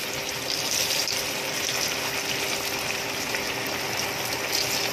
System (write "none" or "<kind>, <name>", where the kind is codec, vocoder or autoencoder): none